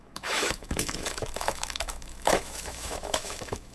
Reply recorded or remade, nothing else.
remade